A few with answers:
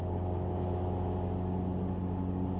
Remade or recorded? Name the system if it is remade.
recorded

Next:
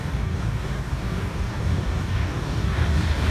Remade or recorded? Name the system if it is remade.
remade, codec, DAC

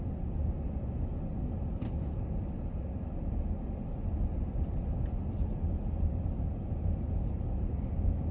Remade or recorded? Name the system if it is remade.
recorded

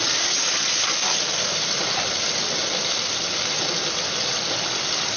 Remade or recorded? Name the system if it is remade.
recorded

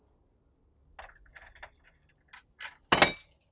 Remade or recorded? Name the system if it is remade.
recorded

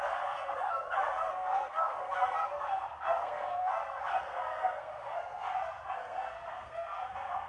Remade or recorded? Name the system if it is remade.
remade, codec, SNAC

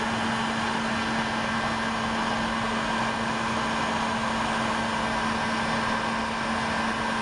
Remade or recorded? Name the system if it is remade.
recorded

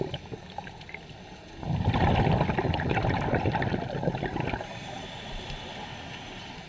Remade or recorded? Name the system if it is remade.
recorded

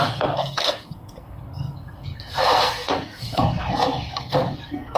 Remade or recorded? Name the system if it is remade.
remade, codec, SNAC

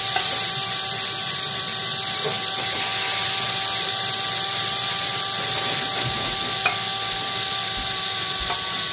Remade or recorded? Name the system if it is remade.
recorded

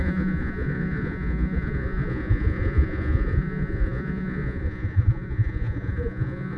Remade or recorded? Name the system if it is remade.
remade, vocoder, Vocos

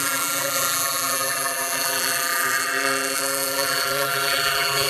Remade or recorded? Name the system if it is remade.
remade, vocoder, BigVGAN v2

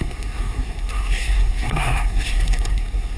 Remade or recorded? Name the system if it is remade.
remade, codec, SNAC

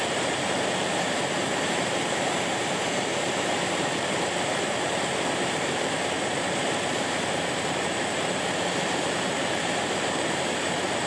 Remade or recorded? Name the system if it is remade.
remade, vocoder, BigVGAN v2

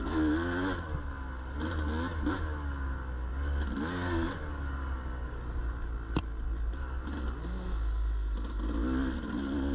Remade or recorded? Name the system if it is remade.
recorded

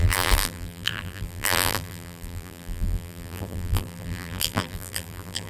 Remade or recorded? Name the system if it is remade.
remade, vocoder, BigVGAN v2